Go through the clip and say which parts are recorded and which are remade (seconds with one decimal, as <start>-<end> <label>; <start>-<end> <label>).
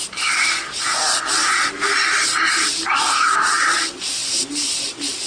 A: 0.0-3.2 recorded; 3.2-4.2 remade; 4.2-5.3 recorded